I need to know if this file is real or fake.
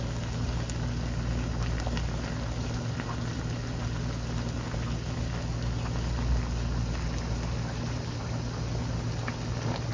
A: real